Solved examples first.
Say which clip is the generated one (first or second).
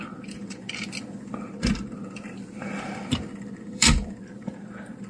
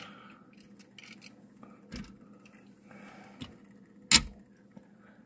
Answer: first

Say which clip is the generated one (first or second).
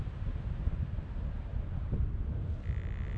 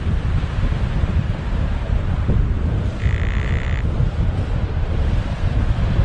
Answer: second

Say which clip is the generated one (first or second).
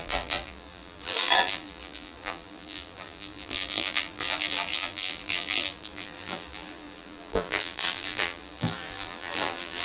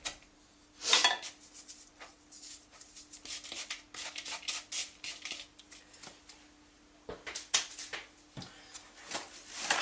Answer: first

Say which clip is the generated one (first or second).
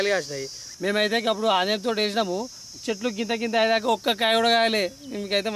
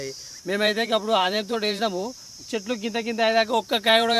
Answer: second